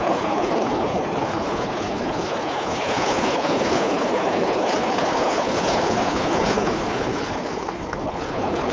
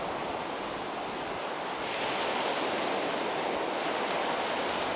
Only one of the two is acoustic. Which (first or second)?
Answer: second